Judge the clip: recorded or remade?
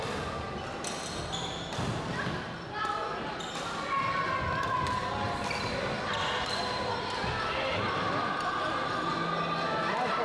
recorded